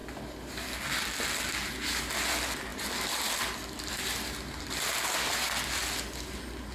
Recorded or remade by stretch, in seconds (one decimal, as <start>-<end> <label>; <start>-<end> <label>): 0.0-6.7 recorded